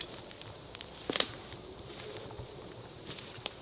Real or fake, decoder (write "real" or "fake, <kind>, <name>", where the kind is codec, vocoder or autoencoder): fake, vocoder, BigVGAN v2